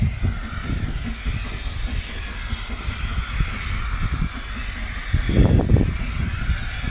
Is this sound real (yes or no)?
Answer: yes